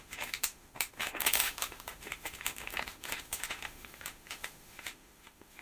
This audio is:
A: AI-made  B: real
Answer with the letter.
A